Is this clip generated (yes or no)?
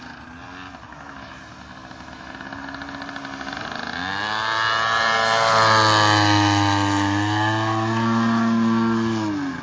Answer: no